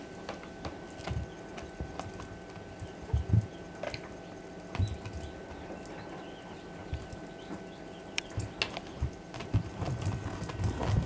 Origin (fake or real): real